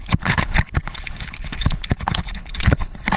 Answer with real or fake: fake